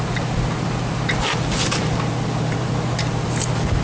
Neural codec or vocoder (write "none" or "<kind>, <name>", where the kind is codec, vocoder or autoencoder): none